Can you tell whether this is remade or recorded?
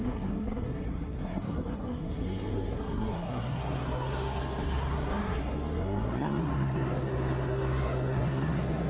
remade